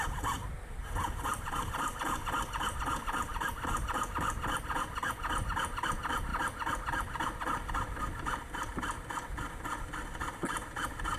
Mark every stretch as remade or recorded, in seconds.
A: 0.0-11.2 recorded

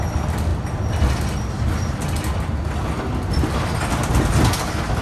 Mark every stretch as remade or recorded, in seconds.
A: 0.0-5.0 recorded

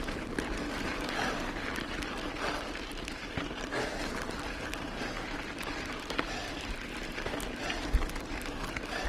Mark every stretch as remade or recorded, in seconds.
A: 0.0-9.1 recorded

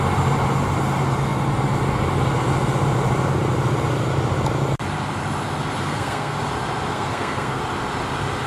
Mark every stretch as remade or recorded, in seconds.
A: 0.0-5.8 recorded; 5.8-6.4 remade; 6.4-6.9 recorded; 6.9-7.6 remade; 7.6-8.5 recorded

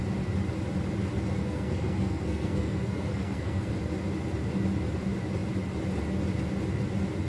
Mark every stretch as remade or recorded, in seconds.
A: 0.0-1.4 recorded; 1.4-3.7 remade; 3.7-7.3 recorded